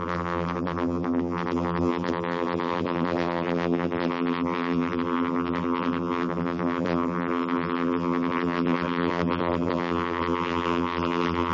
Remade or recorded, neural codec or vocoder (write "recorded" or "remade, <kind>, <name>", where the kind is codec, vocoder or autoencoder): remade, vocoder, BigVGAN v2